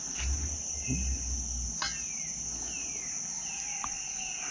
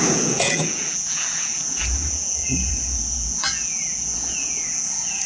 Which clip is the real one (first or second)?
first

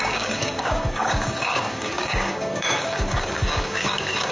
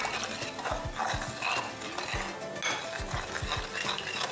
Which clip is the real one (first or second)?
second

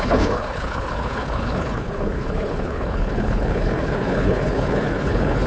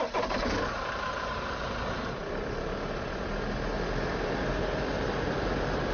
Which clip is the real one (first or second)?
second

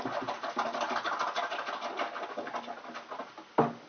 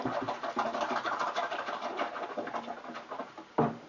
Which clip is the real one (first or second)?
first